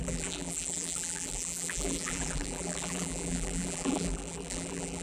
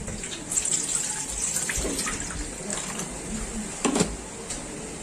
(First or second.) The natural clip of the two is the second